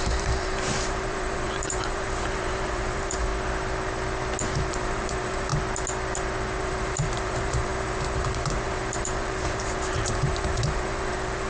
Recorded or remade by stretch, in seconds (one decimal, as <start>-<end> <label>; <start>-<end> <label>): 0.0-3.3 remade; 3.3-4.7 recorded; 4.7-5.5 remade; 5.5-6.6 recorded; 6.6-11.5 remade

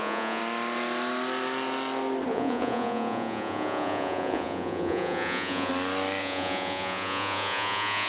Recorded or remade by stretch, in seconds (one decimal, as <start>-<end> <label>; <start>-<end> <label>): 0.0-0.4 remade; 0.4-2.3 recorded; 2.3-5.7 remade; 5.7-6.2 recorded; 6.2-8.1 remade